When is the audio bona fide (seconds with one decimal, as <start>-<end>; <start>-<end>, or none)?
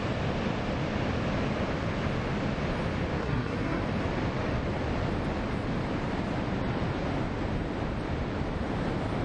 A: 0.0-3.2; 3.8-9.2